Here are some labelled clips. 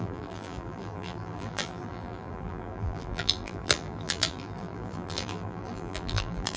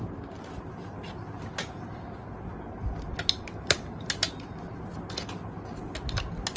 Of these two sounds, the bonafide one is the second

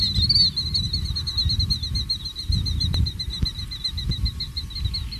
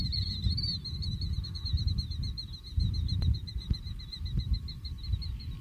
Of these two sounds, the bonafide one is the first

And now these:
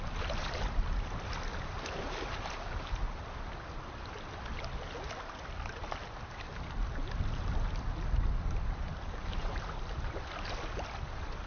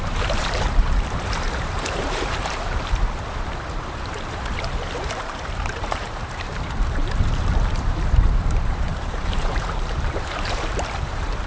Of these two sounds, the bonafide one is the first